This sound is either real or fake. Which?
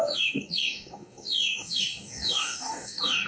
fake